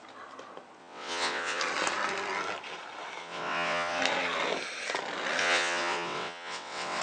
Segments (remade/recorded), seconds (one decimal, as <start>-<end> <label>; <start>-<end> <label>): 0.0-0.8 recorded; 0.8-1.6 remade; 1.6-3.2 recorded; 3.2-4.0 remade; 4.0-5.4 recorded; 5.4-7.0 remade